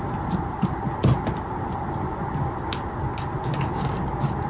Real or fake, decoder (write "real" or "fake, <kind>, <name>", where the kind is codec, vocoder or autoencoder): real